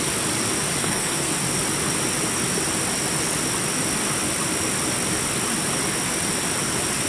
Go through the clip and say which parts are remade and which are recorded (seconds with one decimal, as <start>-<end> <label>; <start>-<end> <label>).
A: 0.0-0.8 recorded; 0.8-1.3 remade; 1.3-7.1 recorded